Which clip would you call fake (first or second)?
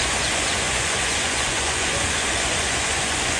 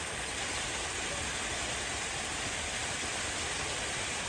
first